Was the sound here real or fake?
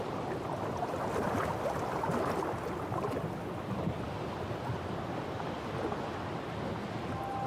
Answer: real